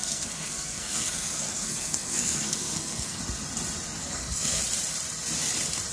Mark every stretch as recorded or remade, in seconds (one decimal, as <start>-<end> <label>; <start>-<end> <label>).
0.0-3.2 remade; 3.2-4.0 recorded; 4.0-4.6 remade; 4.6-5.9 recorded